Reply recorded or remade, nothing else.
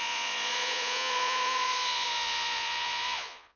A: remade